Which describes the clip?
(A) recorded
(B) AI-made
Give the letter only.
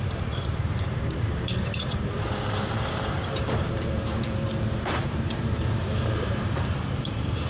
B